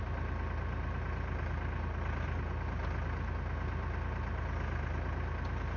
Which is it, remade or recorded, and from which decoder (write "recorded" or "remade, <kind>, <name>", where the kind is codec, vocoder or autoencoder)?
recorded